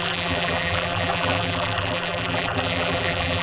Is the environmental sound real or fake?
fake